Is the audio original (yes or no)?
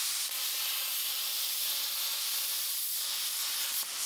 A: yes